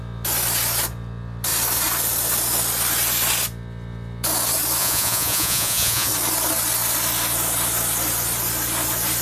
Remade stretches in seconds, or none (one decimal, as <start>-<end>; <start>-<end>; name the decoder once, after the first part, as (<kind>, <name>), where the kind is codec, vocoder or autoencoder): 4.8-6.1 (vocoder, Vocos)